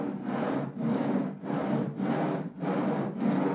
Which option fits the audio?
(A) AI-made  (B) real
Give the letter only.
B